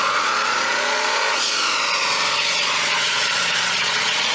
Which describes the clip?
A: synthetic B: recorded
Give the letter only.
A